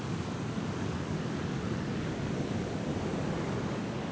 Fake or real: fake